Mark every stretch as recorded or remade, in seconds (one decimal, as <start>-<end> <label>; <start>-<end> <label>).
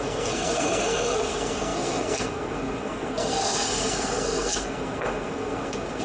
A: 0.0-6.0 remade